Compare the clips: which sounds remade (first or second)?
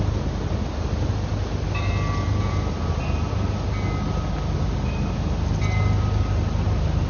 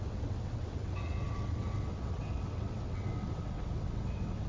second